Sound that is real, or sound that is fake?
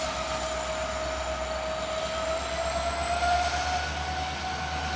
real